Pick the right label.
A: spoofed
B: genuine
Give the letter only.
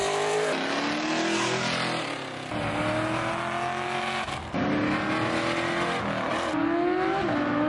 B